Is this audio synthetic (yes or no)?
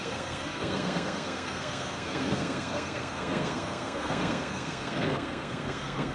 yes